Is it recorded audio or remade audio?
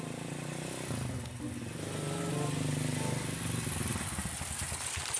recorded